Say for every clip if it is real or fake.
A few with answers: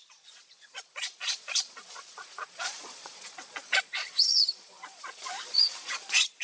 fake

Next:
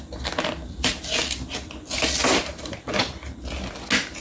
real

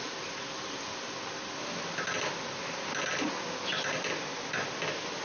real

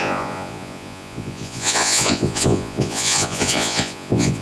fake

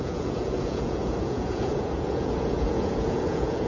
fake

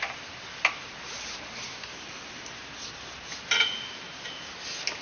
real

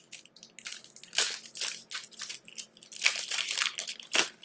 real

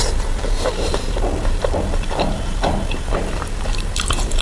fake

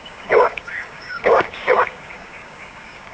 fake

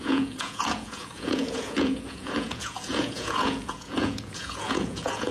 fake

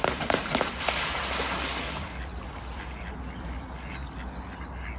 real